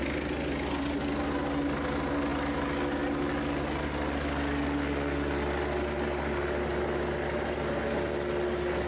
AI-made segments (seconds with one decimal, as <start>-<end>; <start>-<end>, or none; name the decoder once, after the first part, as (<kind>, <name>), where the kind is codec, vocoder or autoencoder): none